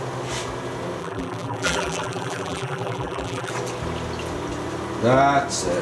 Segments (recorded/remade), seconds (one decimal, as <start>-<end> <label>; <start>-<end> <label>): 0.0-1.0 recorded; 1.0-3.5 remade; 3.5-5.8 recorded